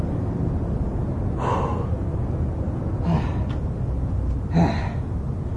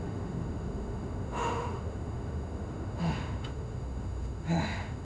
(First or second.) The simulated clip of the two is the second